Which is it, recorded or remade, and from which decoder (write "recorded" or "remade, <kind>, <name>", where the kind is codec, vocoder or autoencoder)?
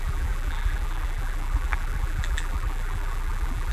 remade, vocoder, BigVGAN v2